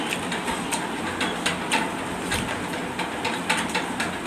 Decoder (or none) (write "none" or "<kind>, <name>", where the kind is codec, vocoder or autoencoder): none